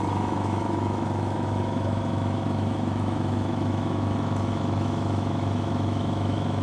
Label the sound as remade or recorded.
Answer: remade